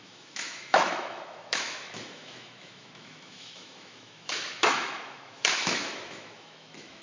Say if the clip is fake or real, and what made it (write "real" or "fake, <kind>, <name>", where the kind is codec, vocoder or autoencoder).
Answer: fake, autoencoder, DAC-VAE